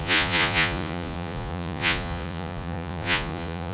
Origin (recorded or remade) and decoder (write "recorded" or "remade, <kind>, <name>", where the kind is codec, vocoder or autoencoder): remade, vocoder, Vocos